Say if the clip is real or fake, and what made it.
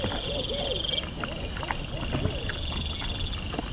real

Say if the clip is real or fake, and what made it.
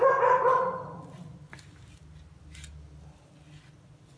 real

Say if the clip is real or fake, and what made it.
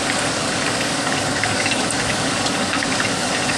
fake, codec, DAC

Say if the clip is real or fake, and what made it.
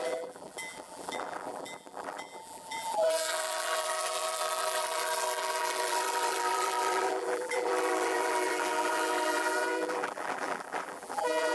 fake, vocoder, BigVGAN v2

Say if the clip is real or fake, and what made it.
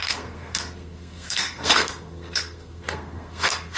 fake, codec, SNAC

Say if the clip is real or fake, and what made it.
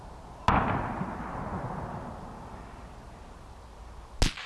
real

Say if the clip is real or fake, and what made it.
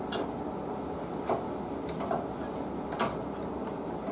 real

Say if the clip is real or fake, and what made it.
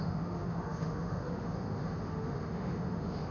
fake, autoencoder, DAC-VAE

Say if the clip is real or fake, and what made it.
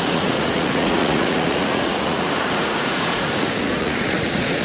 fake, vocoder, Vocos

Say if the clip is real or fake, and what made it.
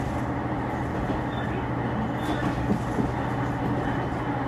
real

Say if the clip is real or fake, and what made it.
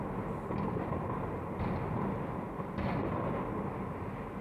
real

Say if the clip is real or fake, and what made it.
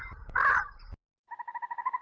real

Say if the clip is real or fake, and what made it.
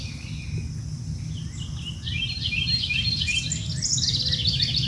real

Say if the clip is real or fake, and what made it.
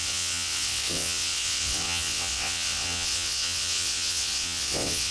fake, vocoder, WaveNeXt